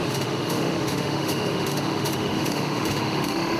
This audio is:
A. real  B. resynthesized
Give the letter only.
B